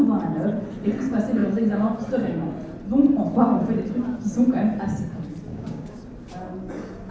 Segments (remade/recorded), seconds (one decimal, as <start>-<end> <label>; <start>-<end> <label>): 0.0-5.5 recorded; 5.5-6.0 remade; 6.0-7.1 recorded